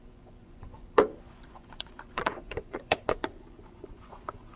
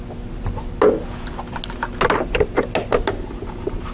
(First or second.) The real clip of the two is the second